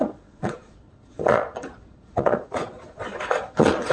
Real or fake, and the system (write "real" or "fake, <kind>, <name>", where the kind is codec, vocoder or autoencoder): fake, vocoder, Vocos